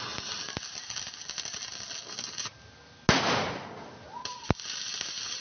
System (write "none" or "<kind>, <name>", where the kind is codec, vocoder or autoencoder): none